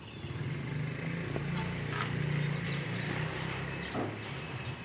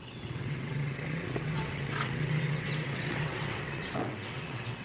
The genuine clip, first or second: first